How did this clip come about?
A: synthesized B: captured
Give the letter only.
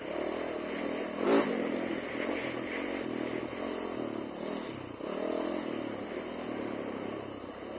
B